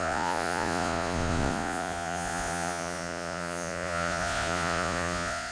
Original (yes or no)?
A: no